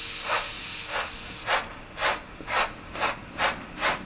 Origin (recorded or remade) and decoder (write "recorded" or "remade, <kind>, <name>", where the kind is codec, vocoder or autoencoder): recorded